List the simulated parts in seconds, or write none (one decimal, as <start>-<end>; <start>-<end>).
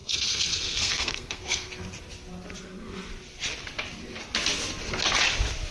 0.0-1.7; 2.6-3.1